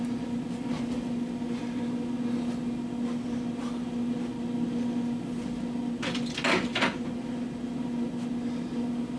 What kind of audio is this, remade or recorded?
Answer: recorded